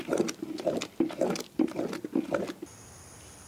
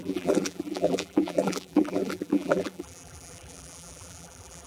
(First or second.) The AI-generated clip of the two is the second